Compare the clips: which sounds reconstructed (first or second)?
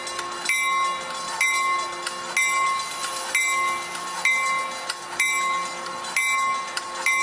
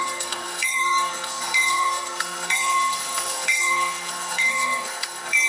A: second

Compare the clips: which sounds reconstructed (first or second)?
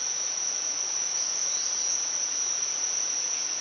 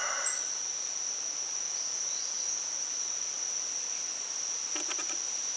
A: first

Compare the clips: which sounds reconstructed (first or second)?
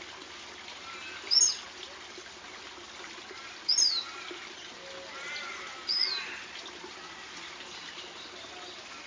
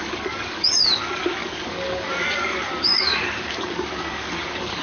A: second